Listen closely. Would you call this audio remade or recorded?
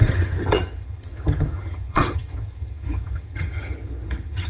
remade